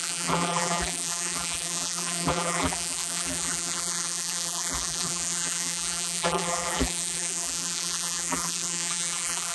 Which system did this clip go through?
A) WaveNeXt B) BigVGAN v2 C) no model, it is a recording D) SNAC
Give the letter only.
B